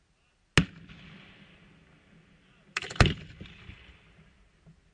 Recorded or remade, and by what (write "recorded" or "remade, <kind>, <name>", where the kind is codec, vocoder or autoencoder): recorded